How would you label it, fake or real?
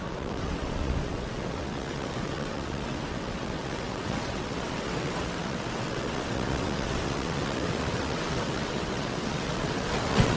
fake